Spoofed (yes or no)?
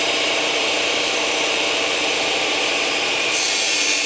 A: yes